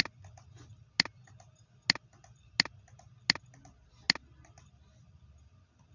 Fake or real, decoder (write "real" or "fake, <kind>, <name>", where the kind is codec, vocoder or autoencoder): real